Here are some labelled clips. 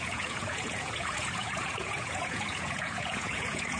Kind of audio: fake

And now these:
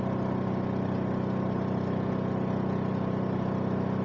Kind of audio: real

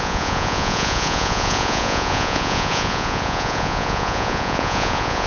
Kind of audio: fake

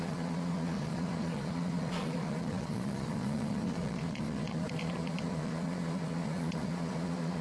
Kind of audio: fake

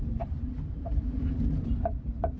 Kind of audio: real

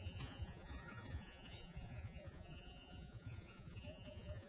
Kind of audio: fake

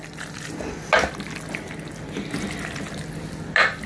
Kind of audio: real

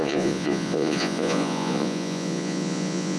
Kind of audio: fake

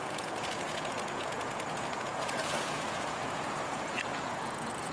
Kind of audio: fake